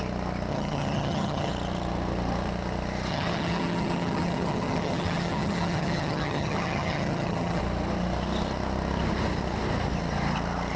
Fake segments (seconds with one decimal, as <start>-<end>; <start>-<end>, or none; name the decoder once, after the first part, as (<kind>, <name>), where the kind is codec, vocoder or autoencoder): 0.5-1.5 (vocoder, HiFi-GAN); 3.1-7.6